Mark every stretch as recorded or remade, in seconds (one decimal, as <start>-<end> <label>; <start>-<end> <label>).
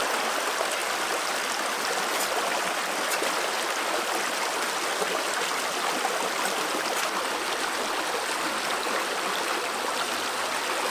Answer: 0.0-10.9 recorded